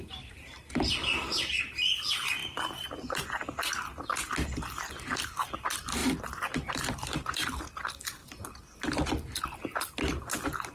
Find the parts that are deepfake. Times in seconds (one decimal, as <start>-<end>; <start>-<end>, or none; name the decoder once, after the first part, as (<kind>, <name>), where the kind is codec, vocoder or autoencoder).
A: none